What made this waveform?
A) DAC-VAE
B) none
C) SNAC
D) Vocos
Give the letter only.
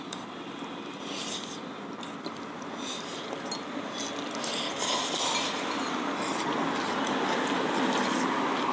B